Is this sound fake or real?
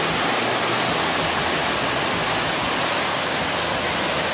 real